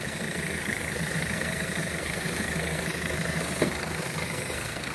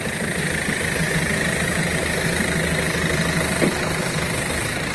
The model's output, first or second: first